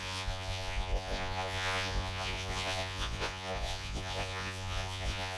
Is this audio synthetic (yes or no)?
yes